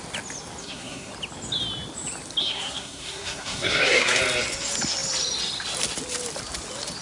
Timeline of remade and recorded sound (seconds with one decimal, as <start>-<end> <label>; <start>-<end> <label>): 0.0-0.6 recorded; 0.6-1.1 remade; 1.1-2.4 recorded; 2.4-4.2 remade; 4.2-7.0 recorded